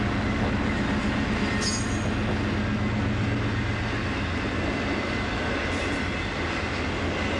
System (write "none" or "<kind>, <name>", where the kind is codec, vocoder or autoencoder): none